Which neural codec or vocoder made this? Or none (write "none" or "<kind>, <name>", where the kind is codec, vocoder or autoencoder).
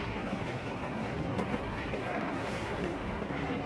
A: codec, SNAC